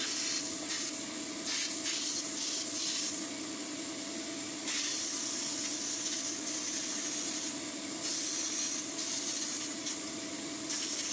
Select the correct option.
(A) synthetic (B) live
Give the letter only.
A